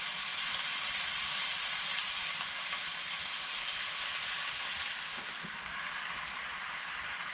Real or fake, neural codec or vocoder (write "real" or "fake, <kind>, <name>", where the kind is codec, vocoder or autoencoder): real